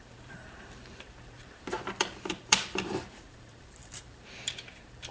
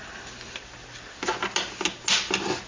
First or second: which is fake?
first